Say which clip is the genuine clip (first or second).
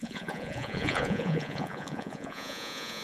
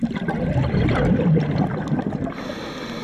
second